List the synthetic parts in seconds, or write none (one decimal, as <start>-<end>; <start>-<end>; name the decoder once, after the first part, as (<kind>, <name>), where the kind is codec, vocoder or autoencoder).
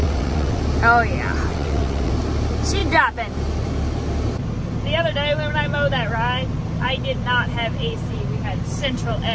0.0-0.6 (vocoder, WaveNeXt); 1.5-2.1